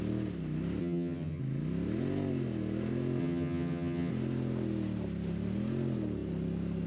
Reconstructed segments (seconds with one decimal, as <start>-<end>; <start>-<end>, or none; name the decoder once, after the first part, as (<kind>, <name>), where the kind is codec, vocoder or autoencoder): 0.8-1.4 (vocoder, HiFi-GAN); 3.2-4.1